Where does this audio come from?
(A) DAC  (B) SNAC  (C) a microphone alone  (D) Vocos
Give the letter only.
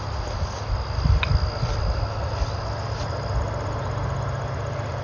C